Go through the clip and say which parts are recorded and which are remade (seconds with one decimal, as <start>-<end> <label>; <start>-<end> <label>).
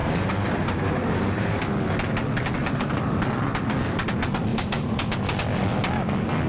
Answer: 0.0-1.6 remade; 1.6-2.6 recorded; 2.6-3.2 remade; 3.2-4.5 recorded; 4.5-5.2 remade; 5.2-6.5 recorded